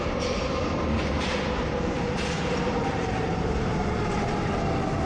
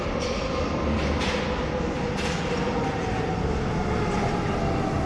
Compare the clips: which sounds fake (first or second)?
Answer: first